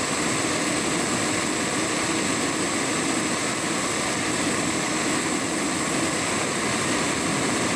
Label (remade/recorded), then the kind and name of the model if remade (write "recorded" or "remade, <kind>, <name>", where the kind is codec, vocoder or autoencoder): recorded